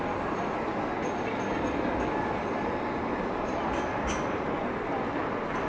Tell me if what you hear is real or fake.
real